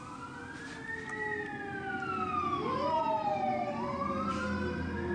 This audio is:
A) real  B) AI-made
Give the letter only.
A